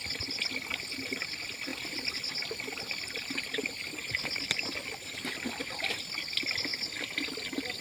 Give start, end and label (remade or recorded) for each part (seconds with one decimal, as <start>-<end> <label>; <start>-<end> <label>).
0.0-7.8 recorded